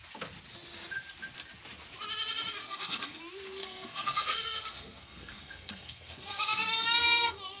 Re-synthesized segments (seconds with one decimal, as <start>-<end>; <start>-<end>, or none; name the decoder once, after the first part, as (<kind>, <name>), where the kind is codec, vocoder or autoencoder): 2.6-3.2 (codec, SNAC); 3.6-7.6